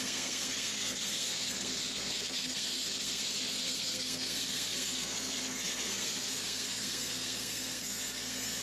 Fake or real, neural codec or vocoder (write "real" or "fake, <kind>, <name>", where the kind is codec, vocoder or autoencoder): fake, codec, SNAC